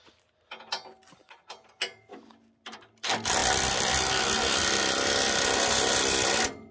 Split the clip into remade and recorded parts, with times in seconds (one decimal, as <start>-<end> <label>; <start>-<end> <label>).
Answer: 0.0-6.7 recorded